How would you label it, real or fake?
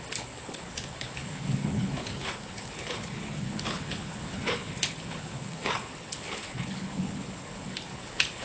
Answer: fake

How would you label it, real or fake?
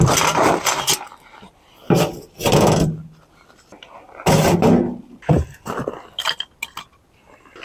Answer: real